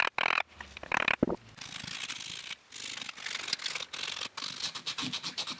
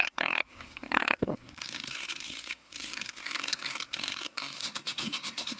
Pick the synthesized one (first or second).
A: second